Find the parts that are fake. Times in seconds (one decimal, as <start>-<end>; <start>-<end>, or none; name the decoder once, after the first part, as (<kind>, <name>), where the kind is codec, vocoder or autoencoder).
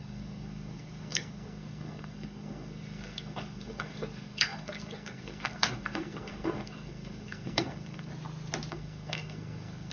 0.0-8.1 (codec, SNAC); 8.7-9.9